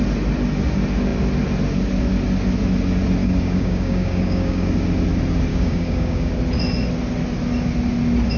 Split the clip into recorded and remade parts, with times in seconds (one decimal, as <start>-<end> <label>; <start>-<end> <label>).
0.0-3.2 recorded; 3.2-4.7 remade; 4.7-5.5 recorded; 5.5-6.3 remade; 6.3-8.4 recorded